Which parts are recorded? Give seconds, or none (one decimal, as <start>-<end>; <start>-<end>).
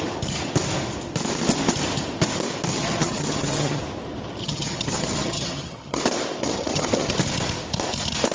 0.0-2.7; 3.8-4.4; 6.0-6.4; 7.1-8.3